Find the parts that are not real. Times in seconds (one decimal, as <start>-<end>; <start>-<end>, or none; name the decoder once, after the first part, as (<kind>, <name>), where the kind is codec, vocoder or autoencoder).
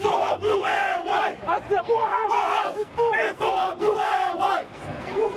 0.0-1.1 (codec, SNAC); 1.8-5.4